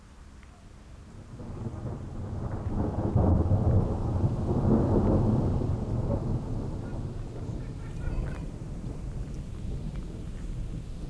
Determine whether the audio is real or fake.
real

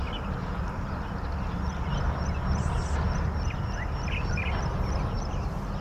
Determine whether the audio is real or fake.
real